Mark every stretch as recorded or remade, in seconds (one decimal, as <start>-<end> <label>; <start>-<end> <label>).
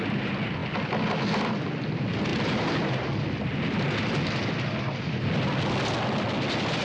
0.0-6.8 recorded